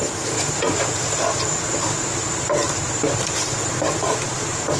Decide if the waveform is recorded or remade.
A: remade